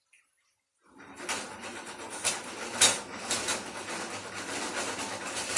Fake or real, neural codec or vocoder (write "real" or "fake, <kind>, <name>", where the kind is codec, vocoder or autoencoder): real